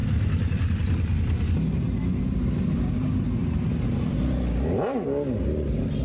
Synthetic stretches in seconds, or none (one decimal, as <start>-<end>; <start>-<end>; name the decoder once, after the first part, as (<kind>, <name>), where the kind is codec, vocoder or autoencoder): none